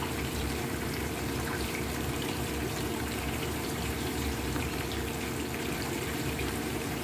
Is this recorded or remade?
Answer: remade